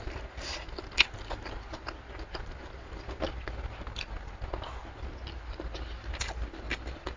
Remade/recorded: recorded